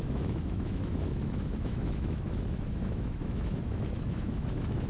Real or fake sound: fake